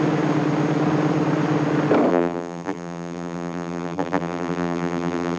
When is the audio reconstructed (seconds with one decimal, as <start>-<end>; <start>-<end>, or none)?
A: 2.1-5.4